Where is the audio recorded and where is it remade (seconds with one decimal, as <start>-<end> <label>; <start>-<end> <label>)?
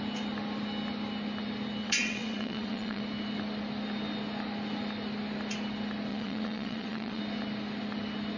0.0-1.8 recorded; 1.8-3.0 remade; 3.0-6.1 recorded; 6.1-7.2 remade; 7.2-8.4 recorded